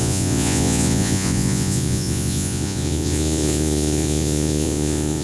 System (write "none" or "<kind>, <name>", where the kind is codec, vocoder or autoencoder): vocoder, Vocos